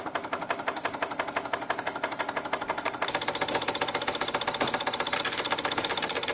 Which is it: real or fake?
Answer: real